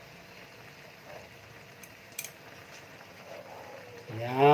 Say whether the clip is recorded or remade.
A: recorded